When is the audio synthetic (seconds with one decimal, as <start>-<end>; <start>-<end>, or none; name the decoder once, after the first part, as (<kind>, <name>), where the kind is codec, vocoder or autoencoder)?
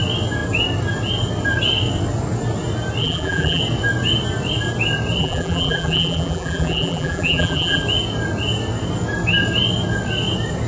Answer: 3.0-3.6 (vocoder, BigVGAN v2); 5.2-7.8